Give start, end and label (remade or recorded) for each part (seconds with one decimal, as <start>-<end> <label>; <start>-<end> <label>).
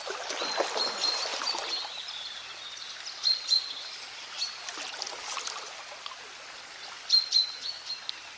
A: 0.0-8.4 recorded